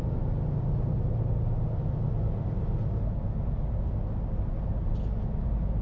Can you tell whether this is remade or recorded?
recorded